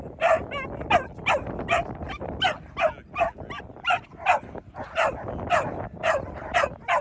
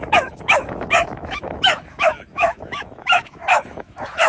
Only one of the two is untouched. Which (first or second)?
first